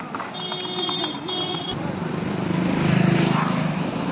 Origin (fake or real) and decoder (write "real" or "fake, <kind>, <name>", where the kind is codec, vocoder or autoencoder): real